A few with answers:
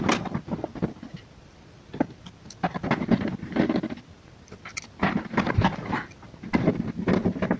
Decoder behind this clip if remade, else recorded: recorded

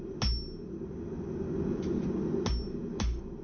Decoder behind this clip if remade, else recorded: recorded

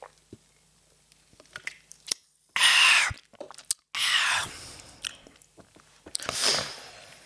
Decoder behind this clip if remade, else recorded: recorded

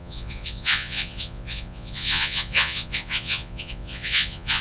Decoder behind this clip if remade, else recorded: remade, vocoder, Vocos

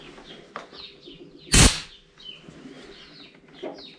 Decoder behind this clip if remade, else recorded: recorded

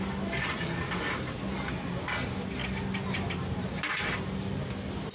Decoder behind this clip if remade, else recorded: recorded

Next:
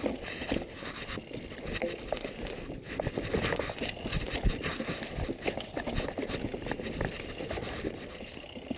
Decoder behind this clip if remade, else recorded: recorded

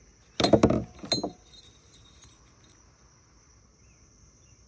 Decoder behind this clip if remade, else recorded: recorded